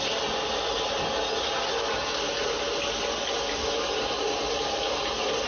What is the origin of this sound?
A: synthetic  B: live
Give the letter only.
B